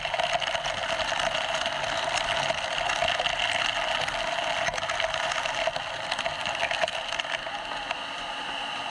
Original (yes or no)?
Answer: yes